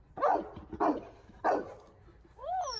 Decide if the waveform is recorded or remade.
recorded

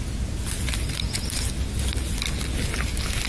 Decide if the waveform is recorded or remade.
recorded